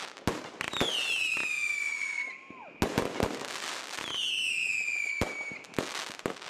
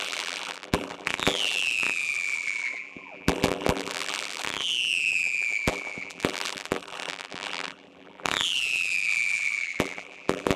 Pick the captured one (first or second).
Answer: first